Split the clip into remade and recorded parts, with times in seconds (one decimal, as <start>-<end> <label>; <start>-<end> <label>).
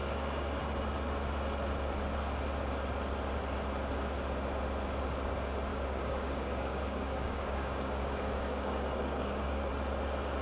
0.0-0.6 remade; 0.6-5.7 recorded; 5.7-9.7 remade; 9.7-10.4 recorded